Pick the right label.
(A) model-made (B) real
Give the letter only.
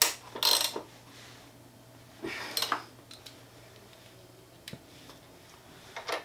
B